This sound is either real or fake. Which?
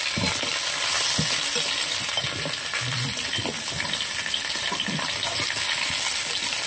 real